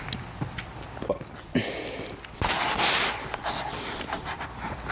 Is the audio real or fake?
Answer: real